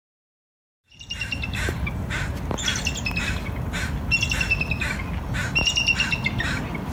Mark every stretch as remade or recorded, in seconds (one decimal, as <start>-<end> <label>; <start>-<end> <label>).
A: 0.0-2.2 remade; 2.2-6.9 recorded